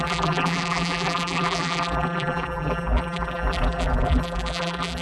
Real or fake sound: fake